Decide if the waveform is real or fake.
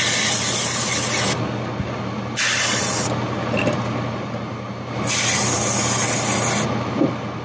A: real